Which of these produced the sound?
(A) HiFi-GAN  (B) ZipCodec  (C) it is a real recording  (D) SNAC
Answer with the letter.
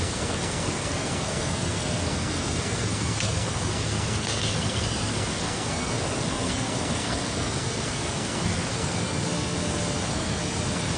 D